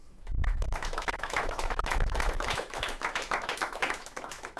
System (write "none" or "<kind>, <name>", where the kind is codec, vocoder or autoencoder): autoencoder, DAC-VAE